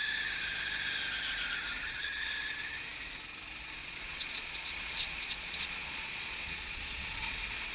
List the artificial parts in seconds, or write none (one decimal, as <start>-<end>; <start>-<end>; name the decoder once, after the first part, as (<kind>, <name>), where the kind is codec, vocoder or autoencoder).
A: 3.8-7.1 (vocoder, Vocos)

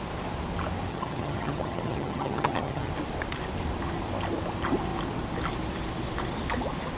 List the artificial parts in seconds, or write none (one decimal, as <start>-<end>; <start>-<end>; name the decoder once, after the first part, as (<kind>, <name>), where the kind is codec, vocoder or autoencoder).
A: 0.9-2.9 (vocoder, HiFi-GAN)

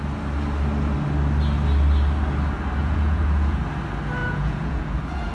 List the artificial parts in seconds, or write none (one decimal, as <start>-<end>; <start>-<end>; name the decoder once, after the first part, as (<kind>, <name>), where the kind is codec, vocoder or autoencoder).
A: 2.8-3.6 (vocoder, Vocos); 4.2-5.3

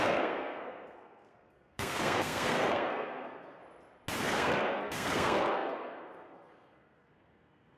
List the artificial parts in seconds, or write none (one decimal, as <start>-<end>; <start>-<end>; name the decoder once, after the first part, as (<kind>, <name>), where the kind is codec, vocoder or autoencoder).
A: 0.0-3.6 (codec, SNAC); 4.2-7.8

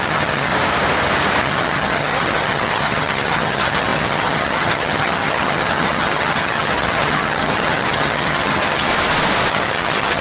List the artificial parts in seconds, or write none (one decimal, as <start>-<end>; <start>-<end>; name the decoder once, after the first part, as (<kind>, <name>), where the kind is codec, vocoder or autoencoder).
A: 0.0-0.5 (vocoder, HiFi-GAN); 1.4-8.9; 9.5-10.2

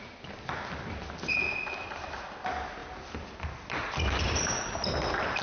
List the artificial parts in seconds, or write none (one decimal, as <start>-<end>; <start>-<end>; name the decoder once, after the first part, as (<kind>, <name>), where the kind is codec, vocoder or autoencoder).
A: none